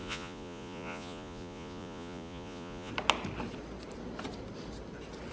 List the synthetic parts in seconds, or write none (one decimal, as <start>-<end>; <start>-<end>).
0.0-2.9